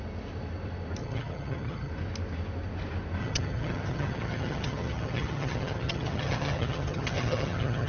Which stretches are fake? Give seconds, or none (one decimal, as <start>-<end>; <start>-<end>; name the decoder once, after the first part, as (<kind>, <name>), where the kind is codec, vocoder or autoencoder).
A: 1.0-1.9 (vocoder, HiFi-GAN); 3.2-7.9